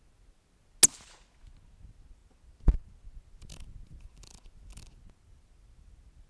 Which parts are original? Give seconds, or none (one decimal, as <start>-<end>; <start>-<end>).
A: 0.0-6.3